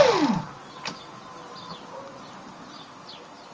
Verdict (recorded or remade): recorded